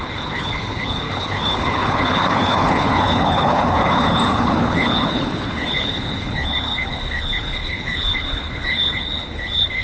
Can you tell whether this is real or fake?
fake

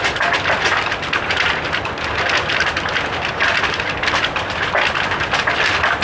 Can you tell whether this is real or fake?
real